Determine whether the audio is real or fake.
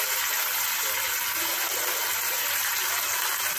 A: real